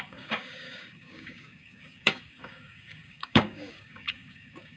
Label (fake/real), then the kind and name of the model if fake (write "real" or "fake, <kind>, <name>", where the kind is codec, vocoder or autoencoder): fake, codec, DAC